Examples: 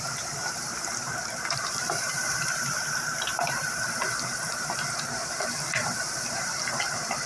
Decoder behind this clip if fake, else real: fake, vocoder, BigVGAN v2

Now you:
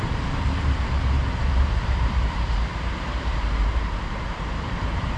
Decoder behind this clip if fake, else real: fake, vocoder, BigVGAN v2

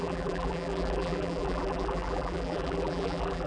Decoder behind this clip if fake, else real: fake, vocoder, BigVGAN v2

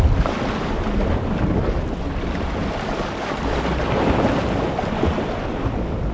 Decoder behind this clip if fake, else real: real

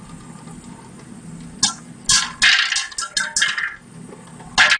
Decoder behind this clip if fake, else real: real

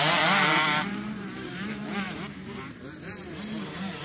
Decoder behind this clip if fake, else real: fake, vocoder, BigVGAN v2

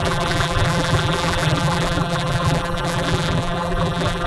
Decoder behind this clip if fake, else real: fake, vocoder, BigVGAN v2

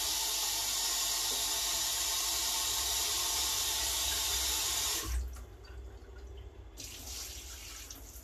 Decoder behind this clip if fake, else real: real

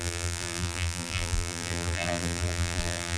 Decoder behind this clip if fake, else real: fake, vocoder, BigVGAN v2